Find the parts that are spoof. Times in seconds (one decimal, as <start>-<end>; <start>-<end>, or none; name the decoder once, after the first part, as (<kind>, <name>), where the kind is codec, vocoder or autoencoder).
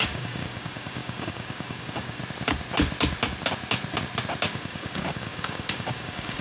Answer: 0.0-2.2 (codec, DAC); 4.5-6.4